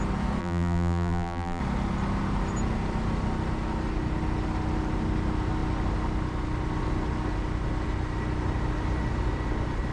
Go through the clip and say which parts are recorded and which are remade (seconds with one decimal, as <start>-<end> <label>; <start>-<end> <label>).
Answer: 0.0-0.4 recorded; 0.4-1.6 remade; 1.6-9.9 recorded